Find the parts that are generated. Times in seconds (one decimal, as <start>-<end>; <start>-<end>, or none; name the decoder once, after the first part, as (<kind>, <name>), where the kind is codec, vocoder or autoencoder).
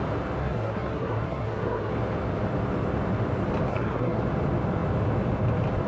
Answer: 0.4-1.9 (codec, SNAC); 3.7-4.2